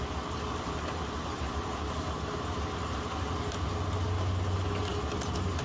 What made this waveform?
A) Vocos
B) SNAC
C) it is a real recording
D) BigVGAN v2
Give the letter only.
C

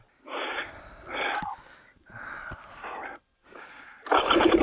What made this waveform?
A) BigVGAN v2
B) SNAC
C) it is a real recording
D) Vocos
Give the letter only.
C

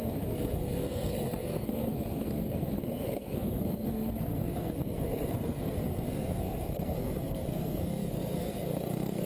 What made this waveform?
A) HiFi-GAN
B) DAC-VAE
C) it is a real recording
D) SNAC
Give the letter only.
D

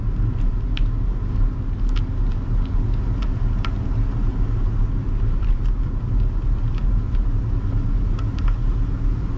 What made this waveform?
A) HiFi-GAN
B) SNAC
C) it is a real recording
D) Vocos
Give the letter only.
C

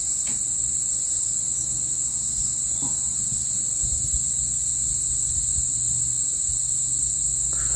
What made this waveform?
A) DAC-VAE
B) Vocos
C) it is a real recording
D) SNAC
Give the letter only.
C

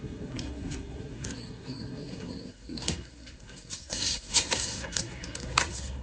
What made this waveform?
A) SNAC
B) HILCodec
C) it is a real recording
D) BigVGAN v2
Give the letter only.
A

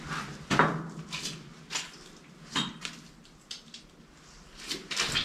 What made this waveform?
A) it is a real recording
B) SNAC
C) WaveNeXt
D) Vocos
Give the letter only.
A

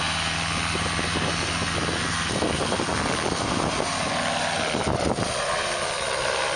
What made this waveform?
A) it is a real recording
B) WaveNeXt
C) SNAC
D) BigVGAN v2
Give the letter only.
A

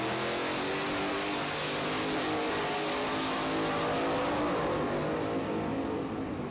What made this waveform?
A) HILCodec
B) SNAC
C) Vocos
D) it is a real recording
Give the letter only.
D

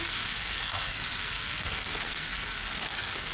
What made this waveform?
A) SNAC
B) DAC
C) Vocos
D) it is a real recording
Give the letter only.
A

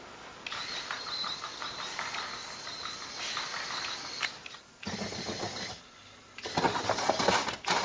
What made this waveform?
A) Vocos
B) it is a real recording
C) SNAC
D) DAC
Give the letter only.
B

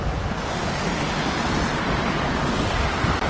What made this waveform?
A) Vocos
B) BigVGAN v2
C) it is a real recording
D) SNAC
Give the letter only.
C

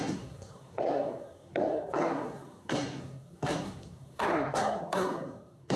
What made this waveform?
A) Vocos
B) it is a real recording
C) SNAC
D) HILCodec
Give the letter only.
C